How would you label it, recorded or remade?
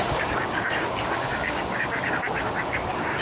remade